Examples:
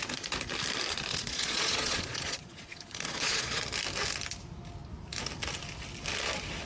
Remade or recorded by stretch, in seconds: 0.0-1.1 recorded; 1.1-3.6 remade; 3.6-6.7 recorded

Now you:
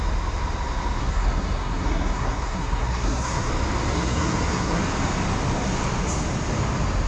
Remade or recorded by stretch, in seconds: 0.0-1.0 recorded; 1.0-3.5 remade; 3.5-3.9 recorded; 3.9-4.8 remade; 4.8-7.1 recorded

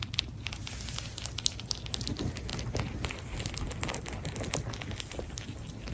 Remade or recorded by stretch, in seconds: 0.0-5.9 recorded

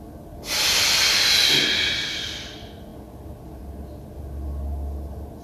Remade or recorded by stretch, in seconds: 0.0-5.4 recorded

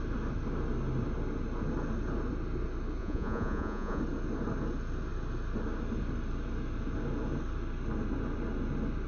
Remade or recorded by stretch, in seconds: 0.0-3.0 recorded; 3.0-4.0 remade; 4.0-9.1 recorded

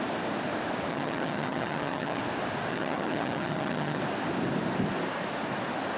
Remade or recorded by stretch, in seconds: 0.0-0.9 recorded; 0.9-2.2 remade; 2.2-2.7 recorded; 2.7-4.0 remade; 4.0-6.0 recorded

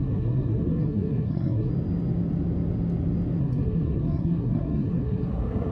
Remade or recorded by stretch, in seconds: 0.0-1.7 remade; 1.7-3.4 recorded; 3.4-5.7 remade